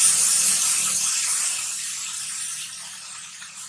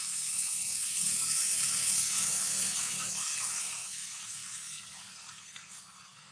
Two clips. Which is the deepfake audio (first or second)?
second